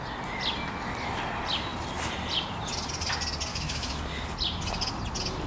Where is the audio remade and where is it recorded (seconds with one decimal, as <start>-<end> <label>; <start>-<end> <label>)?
0.0-3.5 recorded; 3.5-4.0 remade; 4.0-5.5 recorded